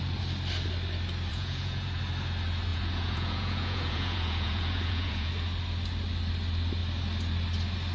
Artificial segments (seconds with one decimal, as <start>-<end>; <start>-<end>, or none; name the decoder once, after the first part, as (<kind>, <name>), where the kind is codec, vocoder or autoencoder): 1.3-2.0 (vocoder, Vocos); 2.7-5.3

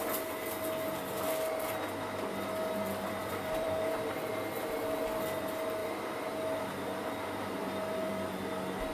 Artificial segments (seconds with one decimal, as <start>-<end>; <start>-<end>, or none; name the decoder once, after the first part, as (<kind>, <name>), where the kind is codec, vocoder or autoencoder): 3.2-4.3 (vocoder, BigVGAN v2); 5.8-8.1

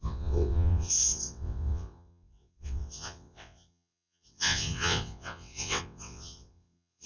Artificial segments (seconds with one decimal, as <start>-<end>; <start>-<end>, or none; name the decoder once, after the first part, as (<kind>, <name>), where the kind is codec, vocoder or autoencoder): 0.0-7.1 (vocoder, WaveNeXt)